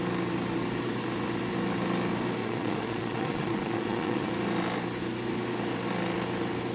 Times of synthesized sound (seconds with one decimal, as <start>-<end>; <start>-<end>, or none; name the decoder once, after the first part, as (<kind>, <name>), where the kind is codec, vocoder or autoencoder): 2.4-4.3 (vocoder, Vocos)